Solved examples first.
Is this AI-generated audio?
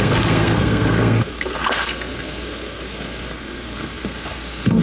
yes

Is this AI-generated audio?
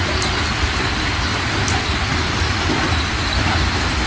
no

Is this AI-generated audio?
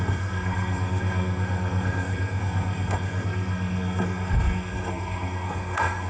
yes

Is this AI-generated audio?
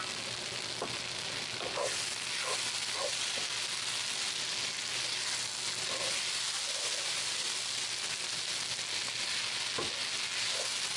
no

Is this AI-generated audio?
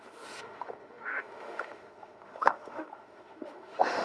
yes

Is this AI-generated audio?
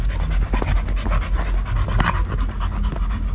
no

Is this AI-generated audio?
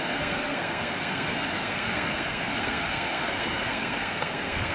yes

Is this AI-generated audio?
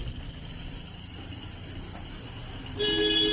no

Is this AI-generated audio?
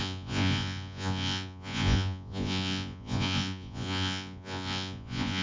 yes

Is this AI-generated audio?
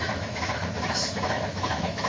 yes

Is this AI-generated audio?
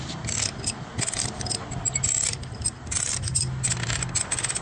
no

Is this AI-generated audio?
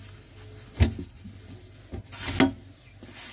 no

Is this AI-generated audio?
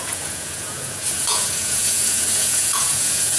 yes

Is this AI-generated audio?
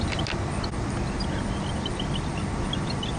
no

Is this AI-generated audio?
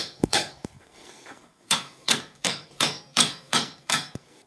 yes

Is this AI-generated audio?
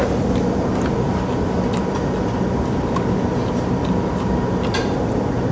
no